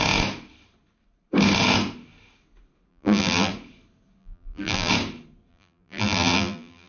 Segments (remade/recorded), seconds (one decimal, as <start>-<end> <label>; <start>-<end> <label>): 0.0-2.9 recorded; 2.9-3.5 remade; 3.5-4.2 recorded; 4.2-4.9 remade; 4.9-5.5 recorded; 5.5-6.9 remade